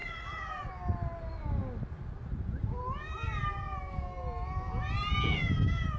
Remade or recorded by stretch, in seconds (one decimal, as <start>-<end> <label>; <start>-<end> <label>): 0.0-0.7 remade; 0.7-6.0 recorded